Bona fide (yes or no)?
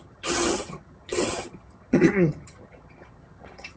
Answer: no